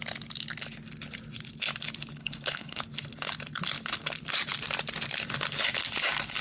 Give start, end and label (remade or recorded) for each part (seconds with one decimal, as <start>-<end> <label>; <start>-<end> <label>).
0.0-2.2 recorded; 2.2-2.8 remade; 2.8-6.4 recorded